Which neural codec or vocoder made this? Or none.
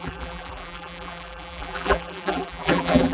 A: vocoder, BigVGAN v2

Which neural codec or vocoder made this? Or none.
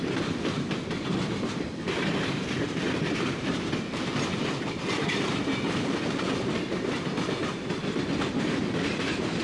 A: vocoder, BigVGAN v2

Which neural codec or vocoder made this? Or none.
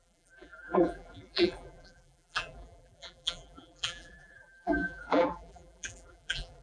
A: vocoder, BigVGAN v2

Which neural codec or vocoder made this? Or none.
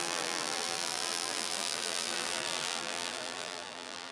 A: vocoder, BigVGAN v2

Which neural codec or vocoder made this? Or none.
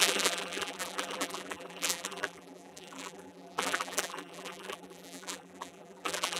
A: vocoder, BigVGAN v2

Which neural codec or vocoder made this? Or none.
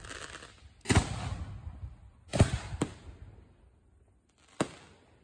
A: none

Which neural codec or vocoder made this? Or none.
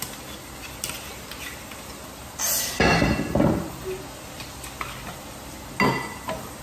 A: none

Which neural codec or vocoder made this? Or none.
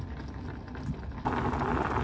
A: none